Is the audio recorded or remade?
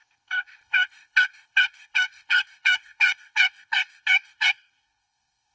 remade